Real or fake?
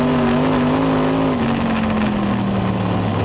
real